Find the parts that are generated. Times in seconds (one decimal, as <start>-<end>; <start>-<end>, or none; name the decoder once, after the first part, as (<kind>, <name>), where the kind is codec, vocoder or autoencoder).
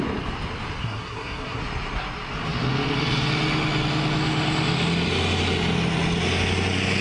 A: 0.8-1.6 (codec, SNAC)